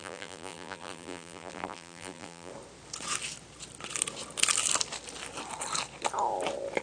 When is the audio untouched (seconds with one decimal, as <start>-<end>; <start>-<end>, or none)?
2.5-6.8